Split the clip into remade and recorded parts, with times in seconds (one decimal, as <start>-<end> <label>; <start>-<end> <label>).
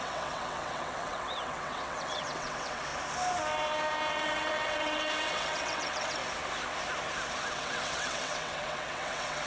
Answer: 0.0-2.9 remade; 2.9-4.1 recorded; 4.1-6.2 remade; 6.2-7.5 recorded; 7.5-9.5 remade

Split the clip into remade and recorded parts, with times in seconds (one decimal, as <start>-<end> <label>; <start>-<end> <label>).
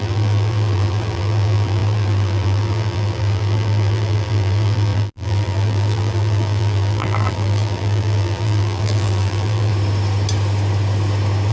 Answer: 0.0-9.7 remade; 9.7-11.5 recorded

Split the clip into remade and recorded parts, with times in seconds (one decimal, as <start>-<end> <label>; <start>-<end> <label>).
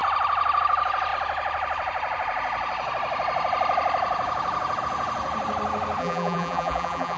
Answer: 0.0-6.0 recorded; 6.0-7.2 remade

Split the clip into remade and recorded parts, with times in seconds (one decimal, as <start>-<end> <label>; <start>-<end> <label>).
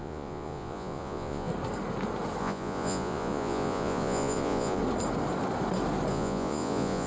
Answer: 0.0-1.5 remade; 1.5-2.4 recorded; 2.4-4.8 remade; 4.8-6.1 recorded; 6.1-7.1 remade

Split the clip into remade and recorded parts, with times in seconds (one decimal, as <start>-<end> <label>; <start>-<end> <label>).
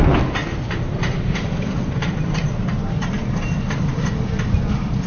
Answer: 0.0-0.4 recorded; 0.4-2.8 remade; 2.8-5.1 recorded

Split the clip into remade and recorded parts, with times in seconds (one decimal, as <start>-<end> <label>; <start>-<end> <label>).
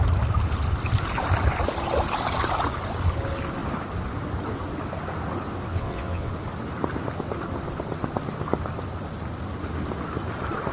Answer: 0.0-5.7 recorded; 5.7-6.3 remade; 6.3-10.7 recorded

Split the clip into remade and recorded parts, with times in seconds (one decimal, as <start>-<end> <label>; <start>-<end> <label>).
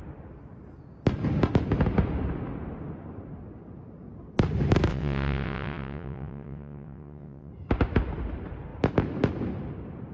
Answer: 0.0-4.9 recorded; 4.9-7.5 remade; 7.5-10.1 recorded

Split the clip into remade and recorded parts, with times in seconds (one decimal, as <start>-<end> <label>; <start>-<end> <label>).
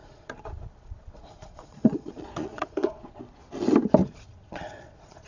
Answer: 0.0-3.2 remade; 3.2-4.0 recorded; 4.0-5.3 remade